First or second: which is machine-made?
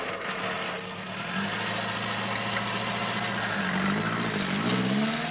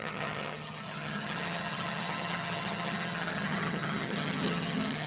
second